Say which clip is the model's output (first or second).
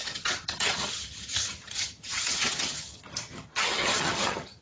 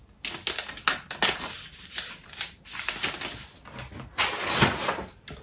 first